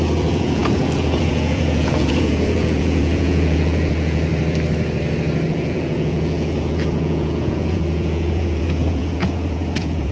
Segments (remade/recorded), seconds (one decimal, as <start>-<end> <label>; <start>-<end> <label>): 0.0-4.3 remade; 4.3-5.5 recorded; 5.5-10.1 remade